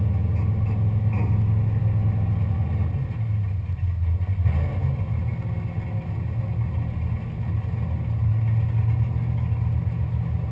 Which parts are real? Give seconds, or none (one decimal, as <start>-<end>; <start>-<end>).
0.0-10.5